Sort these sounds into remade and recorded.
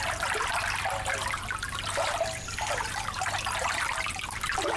recorded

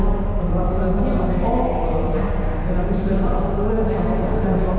recorded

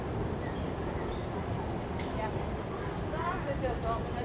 remade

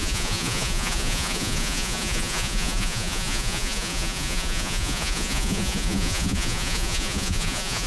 remade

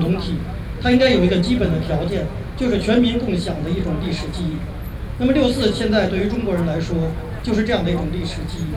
recorded